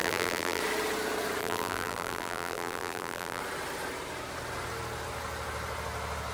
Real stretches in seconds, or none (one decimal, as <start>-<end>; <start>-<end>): 0.6-1.4; 3.4-6.3